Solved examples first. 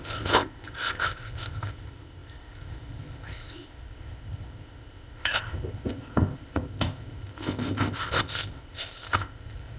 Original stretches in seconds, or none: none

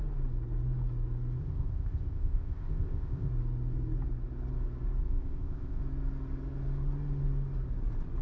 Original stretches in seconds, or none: 0.0-1.4; 3.3-5.0; 5.8-8.2

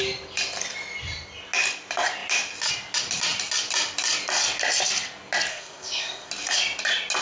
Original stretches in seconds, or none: 0.0-5.5; 6.3-7.2